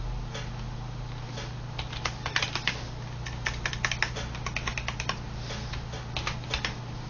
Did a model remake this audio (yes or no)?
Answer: no